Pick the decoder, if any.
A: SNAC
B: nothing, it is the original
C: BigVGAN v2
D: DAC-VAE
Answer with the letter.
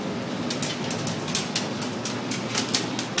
B